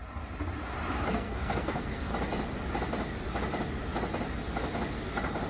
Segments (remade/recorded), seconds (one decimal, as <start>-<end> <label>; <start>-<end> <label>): 0.0-1.1 recorded; 1.1-2.1 remade; 2.1-5.5 recorded